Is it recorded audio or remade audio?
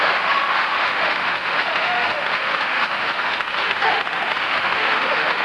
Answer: remade